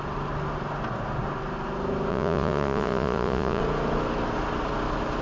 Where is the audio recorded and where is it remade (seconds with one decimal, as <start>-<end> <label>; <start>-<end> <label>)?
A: 0.0-2.1 recorded; 2.1-3.6 remade; 3.6-5.2 recorded